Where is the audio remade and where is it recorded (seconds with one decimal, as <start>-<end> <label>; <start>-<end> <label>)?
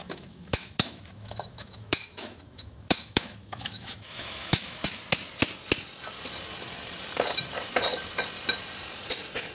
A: 0.0-5.0 remade; 5.0-9.5 recorded